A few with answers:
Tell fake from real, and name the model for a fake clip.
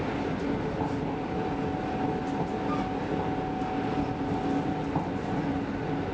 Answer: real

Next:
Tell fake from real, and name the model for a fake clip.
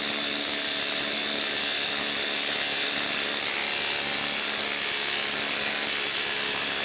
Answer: real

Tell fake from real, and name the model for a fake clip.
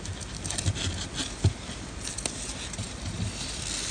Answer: real